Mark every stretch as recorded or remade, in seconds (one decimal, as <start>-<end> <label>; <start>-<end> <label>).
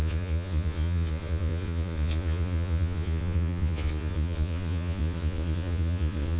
0.0-6.4 remade